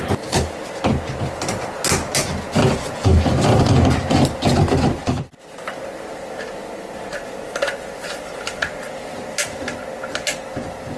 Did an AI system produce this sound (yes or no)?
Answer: no